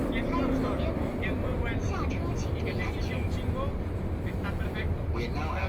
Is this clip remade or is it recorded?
recorded